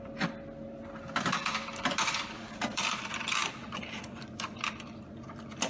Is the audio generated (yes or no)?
yes